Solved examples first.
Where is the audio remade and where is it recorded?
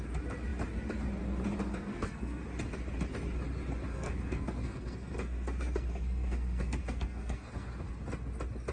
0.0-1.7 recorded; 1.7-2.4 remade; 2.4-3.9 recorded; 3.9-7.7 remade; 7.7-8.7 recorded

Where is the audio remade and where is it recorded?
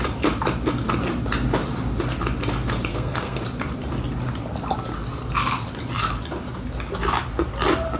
0.0-2.9 recorded; 2.9-3.4 remade; 3.4-8.0 recorded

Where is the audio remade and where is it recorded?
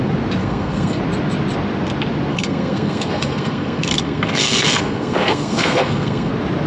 0.0-0.4 recorded; 0.4-1.0 remade; 1.0-2.3 recorded; 2.3-6.3 remade; 6.3-6.7 recorded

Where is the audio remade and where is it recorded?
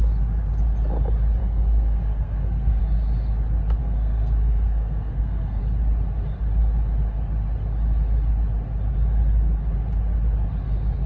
0.0-1.4 recorded; 1.4-2.8 remade; 2.8-3.8 recorded; 3.8-5.6 remade; 5.6-11.1 recorded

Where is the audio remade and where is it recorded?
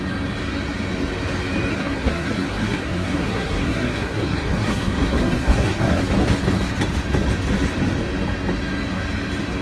0.0-1.7 recorded; 1.7-6.0 remade; 6.0-9.6 recorded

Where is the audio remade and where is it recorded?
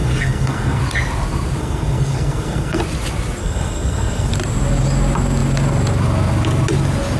0.0-0.8 remade; 0.8-1.6 recorded; 1.6-2.8 remade; 2.8-3.4 recorded; 3.4-4.3 remade; 4.3-7.2 recorded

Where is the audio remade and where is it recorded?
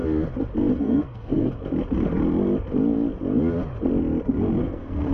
0.0-0.8 recorded; 0.8-1.5 remade; 1.5-4.6 recorded; 4.6-5.1 remade